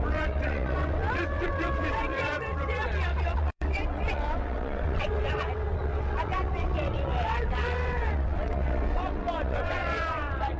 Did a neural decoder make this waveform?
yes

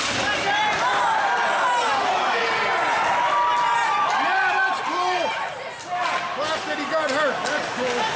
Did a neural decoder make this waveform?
no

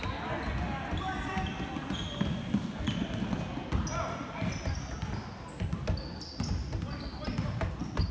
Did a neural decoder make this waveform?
no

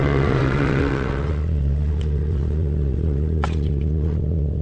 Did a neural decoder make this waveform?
yes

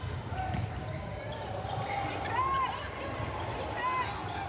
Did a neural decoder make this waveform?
no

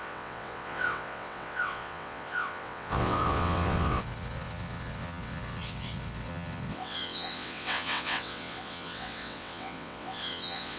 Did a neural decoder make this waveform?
yes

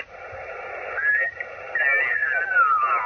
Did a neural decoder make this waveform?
no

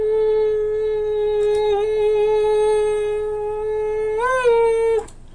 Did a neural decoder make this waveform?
no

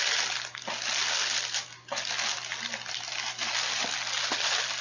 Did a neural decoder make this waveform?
no